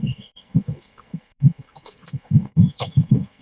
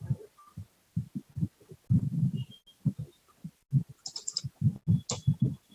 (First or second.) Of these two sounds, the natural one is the second